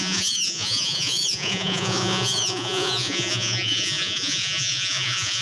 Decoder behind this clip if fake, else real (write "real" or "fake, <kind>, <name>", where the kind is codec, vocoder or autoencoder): fake, vocoder, Vocos